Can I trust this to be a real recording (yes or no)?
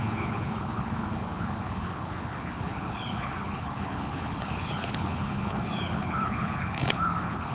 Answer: no